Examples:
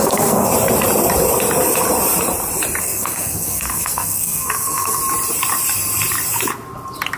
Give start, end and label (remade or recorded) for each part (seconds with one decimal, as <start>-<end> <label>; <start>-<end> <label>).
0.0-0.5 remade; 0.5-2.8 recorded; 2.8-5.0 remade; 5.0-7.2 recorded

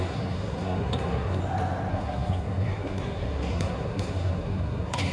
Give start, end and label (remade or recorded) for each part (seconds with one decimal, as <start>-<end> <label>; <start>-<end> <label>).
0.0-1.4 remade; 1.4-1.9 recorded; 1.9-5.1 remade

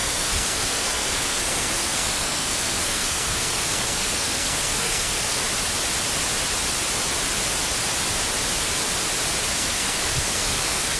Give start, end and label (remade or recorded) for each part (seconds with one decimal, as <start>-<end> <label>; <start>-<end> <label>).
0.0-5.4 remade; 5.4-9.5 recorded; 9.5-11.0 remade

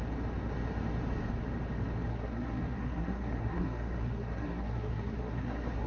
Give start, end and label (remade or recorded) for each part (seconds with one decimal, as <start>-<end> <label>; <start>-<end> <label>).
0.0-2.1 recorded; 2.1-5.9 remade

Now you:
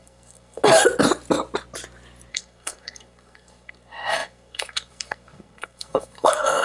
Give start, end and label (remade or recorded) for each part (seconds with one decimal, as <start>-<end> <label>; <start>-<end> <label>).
0.0-0.6 remade; 0.6-2.3 recorded; 2.3-6.6 remade